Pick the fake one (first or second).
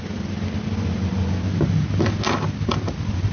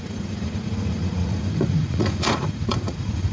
second